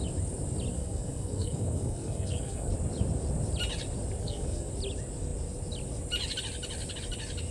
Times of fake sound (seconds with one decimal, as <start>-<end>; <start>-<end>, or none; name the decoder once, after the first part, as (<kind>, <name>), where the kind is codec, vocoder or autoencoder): 0.7-2.7 (codec, SNAC); 4.2-4.7